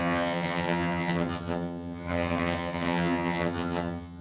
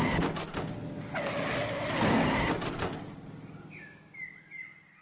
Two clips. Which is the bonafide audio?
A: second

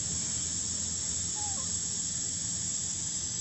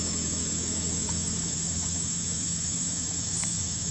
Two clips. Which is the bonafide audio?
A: first